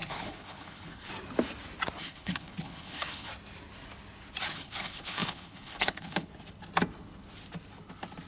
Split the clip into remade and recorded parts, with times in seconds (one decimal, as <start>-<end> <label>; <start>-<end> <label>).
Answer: 0.0-1.1 remade; 1.1-2.0 recorded; 2.0-3.3 remade; 3.3-4.5 recorded; 4.5-6.3 remade; 6.3-8.3 recorded